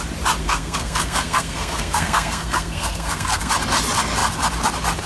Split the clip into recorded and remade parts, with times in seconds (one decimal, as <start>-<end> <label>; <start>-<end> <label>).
0.0-0.4 recorded; 0.4-3.5 remade; 3.5-5.1 recorded